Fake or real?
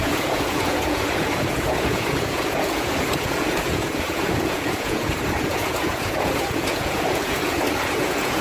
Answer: fake